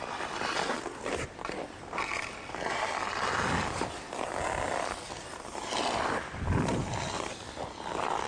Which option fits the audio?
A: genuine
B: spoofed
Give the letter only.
A